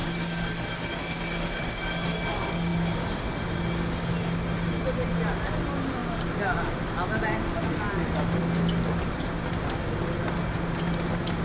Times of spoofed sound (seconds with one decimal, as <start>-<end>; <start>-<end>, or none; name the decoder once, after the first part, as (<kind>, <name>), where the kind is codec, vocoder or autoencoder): none